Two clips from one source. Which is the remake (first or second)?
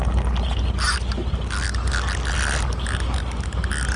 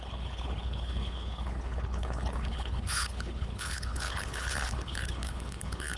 second